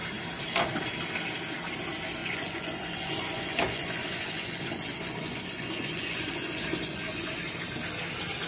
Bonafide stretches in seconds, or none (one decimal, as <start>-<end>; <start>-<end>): 0.0-2.2; 7.3-8.5